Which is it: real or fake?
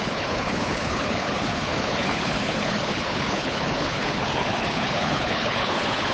fake